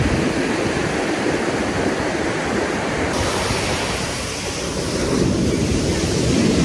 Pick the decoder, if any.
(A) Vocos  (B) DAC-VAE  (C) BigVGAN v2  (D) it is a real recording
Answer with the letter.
C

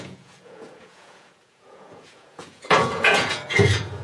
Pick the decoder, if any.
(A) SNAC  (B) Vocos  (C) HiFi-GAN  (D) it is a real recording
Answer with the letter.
B